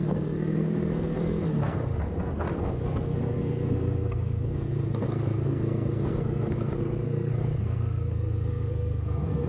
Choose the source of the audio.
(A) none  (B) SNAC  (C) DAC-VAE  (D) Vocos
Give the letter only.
B